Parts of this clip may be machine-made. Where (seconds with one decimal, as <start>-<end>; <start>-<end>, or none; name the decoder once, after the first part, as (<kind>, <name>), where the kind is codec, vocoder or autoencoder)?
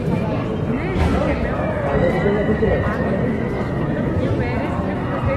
1.1-2.1 (vocoder, BigVGAN v2)